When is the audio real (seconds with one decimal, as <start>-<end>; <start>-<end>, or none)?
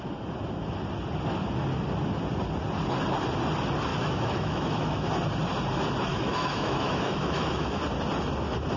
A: 0.0-3.9; 5.1-6.1; 7.8-8.8